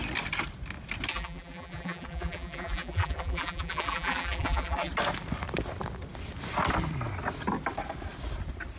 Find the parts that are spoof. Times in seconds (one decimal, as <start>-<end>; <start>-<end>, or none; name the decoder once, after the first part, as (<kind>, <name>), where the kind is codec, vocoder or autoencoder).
1.1-4.9 (vocoder, BigVGAN v2)